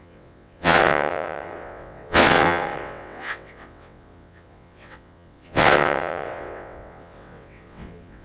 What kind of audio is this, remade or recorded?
remade